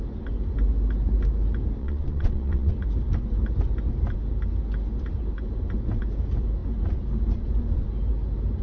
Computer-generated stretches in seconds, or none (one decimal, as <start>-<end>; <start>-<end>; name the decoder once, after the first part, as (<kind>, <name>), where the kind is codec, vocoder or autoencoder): 1.8-2.7 (vocoder, WaveNeXt)